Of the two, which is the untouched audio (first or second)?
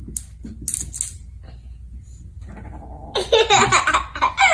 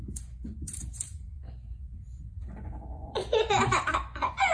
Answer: first